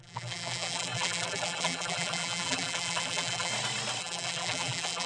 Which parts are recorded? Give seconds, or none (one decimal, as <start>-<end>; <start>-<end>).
3.5-4.0